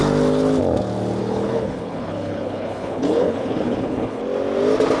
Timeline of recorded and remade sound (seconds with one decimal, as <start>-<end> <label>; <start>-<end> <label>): 0.0-1.2 recorded; 1.2-4.2 remade; 4.2-5.0 recorded